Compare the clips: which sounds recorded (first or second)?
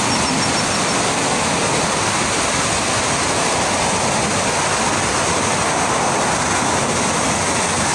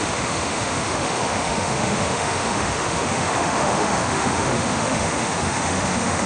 first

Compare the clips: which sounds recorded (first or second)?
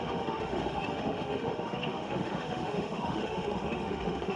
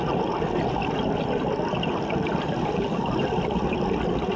second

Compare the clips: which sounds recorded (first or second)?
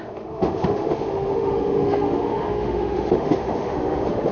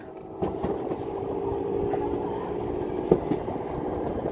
second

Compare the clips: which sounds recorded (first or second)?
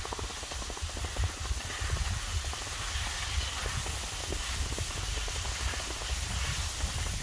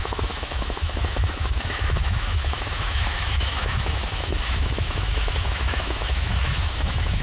first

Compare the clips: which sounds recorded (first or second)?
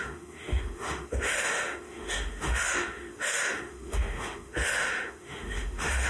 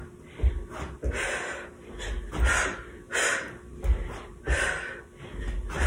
second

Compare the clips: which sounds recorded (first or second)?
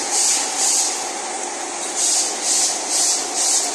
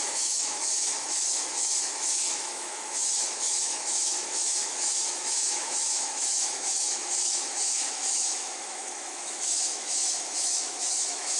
first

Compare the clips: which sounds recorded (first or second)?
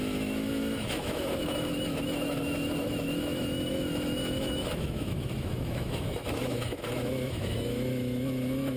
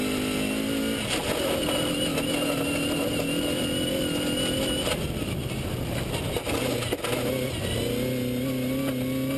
second